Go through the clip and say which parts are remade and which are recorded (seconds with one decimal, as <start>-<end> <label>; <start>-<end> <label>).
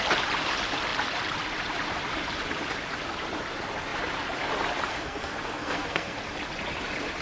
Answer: 0.0-4.9 recorded; 4.9-6.2 remade; 6.2-7.2 recorded